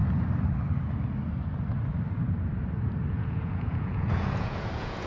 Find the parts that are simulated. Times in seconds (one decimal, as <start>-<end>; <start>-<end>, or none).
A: 3.1-5.1